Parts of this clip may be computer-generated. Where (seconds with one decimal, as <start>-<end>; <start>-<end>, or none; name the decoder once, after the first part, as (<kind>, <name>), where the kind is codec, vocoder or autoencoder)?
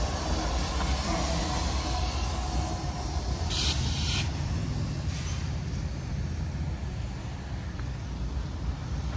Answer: none